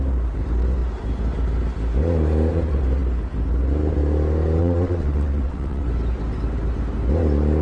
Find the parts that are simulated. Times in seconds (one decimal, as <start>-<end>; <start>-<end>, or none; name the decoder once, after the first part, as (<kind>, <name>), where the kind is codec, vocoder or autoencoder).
4.6-5.9 (vocoder, WaveNeXt)